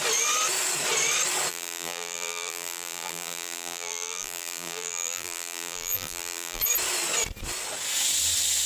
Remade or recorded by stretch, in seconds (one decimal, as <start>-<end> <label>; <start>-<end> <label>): 0.0-1.5 recorded; 1.5-6.6 remade; 6.6-8.7 recorded